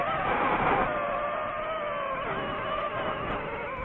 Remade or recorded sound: recorded